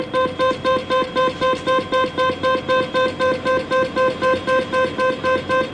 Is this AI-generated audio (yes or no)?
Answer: no